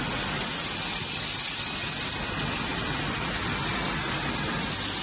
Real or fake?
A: real